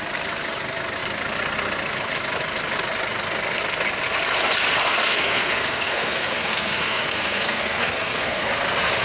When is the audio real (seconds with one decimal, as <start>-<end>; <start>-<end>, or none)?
0.0-4.8; 8.5-9.0